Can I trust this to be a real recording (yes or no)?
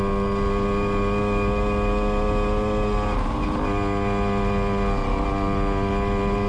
yes